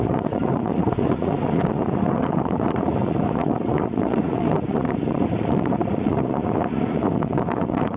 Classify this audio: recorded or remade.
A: remade